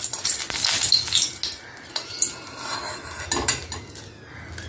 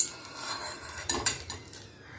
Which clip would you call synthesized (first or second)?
second